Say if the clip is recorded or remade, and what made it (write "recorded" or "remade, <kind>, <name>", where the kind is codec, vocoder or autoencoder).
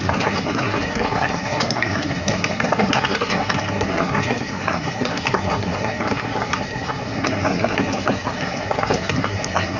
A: remade, codec, SNAC